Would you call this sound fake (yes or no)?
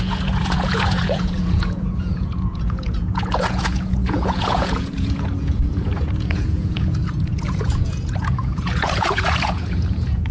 yes